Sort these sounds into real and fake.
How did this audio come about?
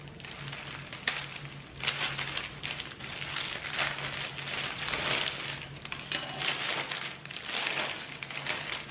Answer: real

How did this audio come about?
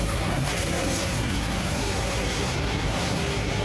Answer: fake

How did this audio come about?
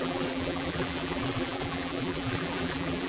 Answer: fake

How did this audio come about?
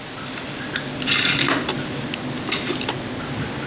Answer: real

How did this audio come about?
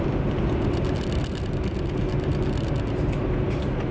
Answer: real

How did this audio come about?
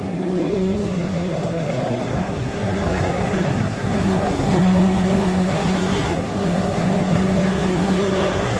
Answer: fake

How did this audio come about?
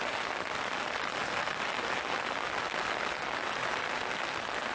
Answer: real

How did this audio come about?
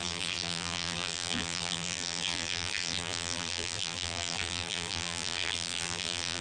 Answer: fake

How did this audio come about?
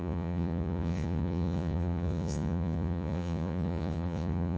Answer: fake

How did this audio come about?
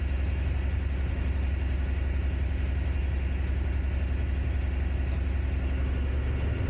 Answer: real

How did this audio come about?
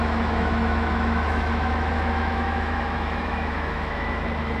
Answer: fake